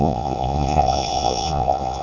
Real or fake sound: fake